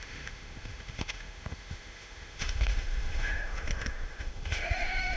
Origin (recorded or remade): remade